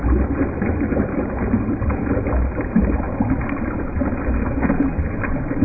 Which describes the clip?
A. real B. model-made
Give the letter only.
A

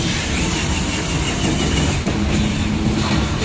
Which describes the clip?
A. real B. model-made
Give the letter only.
A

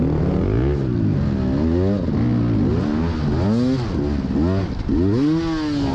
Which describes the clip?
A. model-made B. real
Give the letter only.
B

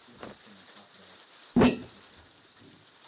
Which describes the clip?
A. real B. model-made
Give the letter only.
B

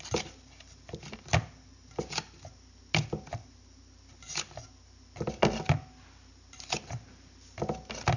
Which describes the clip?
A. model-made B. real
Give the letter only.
B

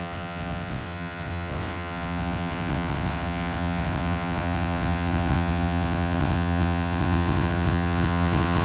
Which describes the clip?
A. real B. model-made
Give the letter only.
B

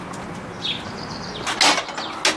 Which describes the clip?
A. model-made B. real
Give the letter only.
B